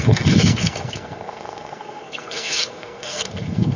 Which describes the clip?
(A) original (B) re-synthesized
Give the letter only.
B